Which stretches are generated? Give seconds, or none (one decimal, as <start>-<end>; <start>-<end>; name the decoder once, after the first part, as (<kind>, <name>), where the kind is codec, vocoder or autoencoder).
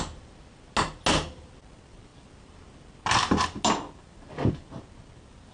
none